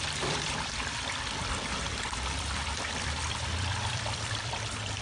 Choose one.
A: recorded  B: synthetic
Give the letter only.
B